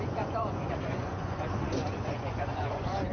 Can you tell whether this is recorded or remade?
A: remade